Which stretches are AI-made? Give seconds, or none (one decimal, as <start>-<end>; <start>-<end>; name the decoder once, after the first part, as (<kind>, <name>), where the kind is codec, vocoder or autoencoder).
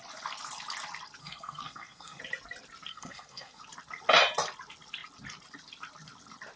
1.2-2.2 (codec, SNAC); 2.9-3.6